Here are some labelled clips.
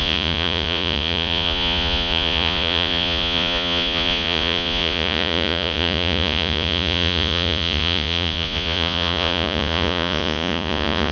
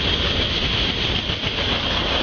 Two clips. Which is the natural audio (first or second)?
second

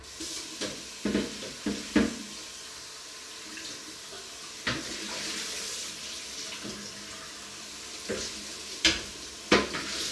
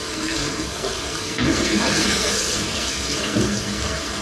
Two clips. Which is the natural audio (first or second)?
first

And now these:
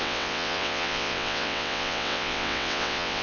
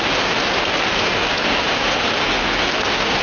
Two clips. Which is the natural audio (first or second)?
second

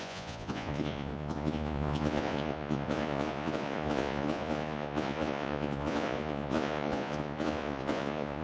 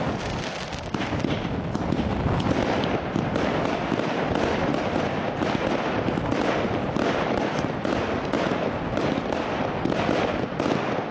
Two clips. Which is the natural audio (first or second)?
second